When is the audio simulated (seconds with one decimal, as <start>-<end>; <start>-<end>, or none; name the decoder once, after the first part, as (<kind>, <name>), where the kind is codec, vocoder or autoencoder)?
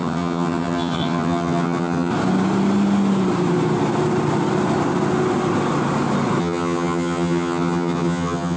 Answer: 0.0-2.1 (vocoder, HiFi-GAN); 6.4-8.6